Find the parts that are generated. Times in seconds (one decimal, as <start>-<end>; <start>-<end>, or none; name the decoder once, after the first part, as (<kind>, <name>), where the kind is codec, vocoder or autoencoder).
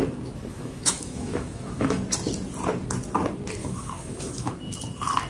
0.5-2.0 (autoencoder, DAC-VAE); 3.6-4.5